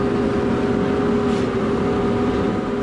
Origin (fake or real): real